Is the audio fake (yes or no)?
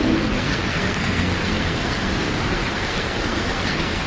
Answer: yes